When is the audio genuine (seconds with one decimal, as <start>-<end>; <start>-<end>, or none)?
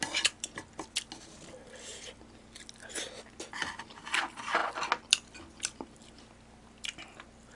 0.0-7.6